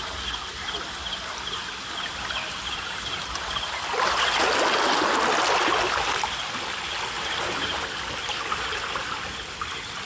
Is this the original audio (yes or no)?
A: yes